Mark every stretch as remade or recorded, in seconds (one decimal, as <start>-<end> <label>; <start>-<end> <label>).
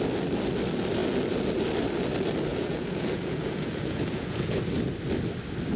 0.0-2.5 recorded; 2.5-4.6 remade; 4.6-5.8 recorded